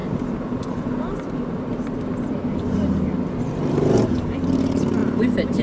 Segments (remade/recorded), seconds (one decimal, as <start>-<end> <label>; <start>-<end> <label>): 0.0-3.4 recorded; 3.4-5.6 remade